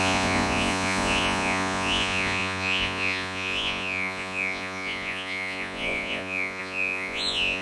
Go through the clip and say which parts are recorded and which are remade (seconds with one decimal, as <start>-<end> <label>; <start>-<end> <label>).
0.0-7.6 remade

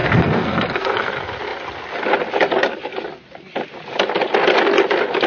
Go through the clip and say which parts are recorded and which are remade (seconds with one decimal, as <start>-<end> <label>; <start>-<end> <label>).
0.0-1.1 remade; 1.1-5.3 recorded

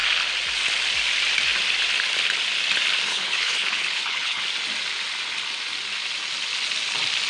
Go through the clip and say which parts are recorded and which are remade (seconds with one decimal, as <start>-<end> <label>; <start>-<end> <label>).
0.0-3.1 recorded; 3.1-4.4 remade; 4.4-7.3 recorded

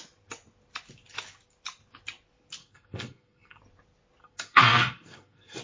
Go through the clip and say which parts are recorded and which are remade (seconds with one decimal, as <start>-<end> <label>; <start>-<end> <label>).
0.0-2.6 recorded; 2.6-3.6 remade; 3.6-4.2 recorded; 4.2-5.6 remade

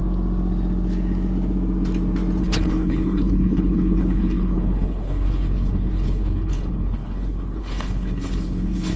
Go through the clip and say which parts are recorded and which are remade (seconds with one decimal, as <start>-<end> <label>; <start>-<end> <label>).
0.0-2.4 recorded; 2.4-9.0 remade

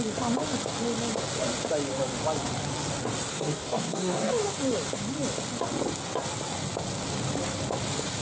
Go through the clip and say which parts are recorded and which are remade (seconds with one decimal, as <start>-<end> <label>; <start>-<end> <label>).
0.0-3.3 recorded; 3.3-4.3 remade; 4.3-8.2 recorded